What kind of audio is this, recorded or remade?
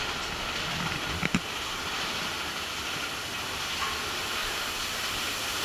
recorded